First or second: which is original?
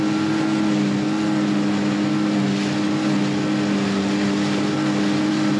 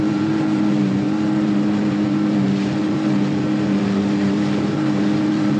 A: first